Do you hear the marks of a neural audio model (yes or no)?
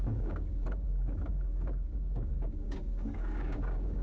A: yes